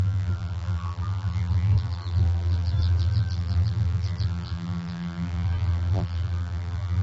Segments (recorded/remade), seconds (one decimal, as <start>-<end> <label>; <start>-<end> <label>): 0.0-7.0 remade